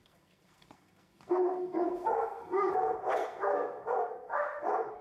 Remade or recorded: remade